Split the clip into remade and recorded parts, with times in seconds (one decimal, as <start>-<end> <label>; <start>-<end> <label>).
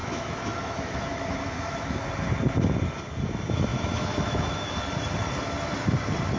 0.0-2.0 remade; 2.0-3.7 recorded; 3.7-4.7 remade; 4.7-6.4 recorded